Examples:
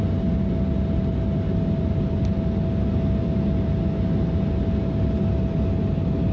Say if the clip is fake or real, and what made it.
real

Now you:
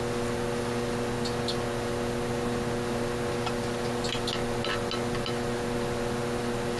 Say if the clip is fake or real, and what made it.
real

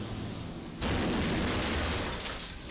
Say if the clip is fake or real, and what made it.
real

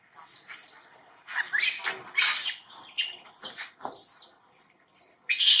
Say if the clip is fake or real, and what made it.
real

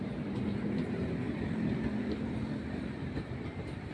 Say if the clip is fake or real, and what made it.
fake, vocoder, BigVGAN v2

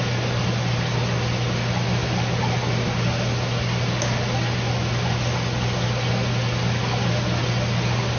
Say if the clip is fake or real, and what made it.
real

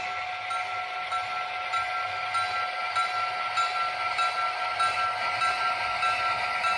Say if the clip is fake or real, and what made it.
real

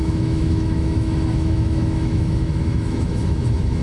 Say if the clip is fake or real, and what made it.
fake, autoencoder, DAC-VAE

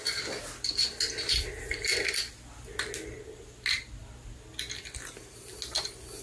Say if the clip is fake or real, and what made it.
real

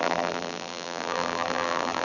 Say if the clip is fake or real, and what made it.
fake, vocoder, BigVGAN v2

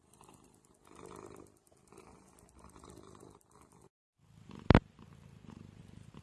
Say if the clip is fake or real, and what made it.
real